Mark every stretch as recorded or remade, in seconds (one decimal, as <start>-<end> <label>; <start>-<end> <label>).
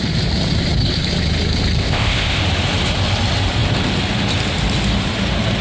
0.0-1.8 recorded; 1.8-2.4 remade; 2.4-5.6 recorded